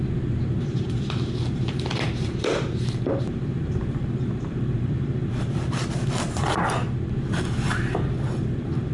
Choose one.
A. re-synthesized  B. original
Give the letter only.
A